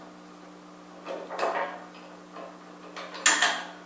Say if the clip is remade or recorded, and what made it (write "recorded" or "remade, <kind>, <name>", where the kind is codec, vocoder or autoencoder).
recorded